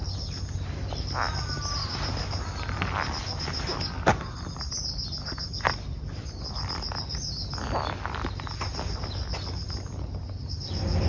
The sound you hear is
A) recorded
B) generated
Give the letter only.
A